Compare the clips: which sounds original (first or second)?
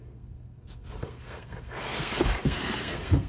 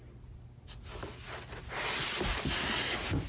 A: second